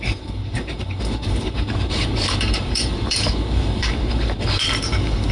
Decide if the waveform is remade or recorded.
remade